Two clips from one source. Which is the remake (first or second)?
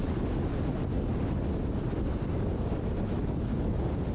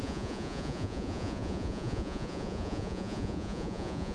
second